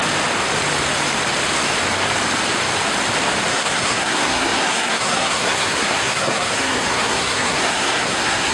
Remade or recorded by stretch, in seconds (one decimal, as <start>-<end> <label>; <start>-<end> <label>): 0.0-3.5 recorded; 3.5-8.5 remade